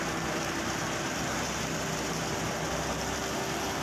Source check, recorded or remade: recorded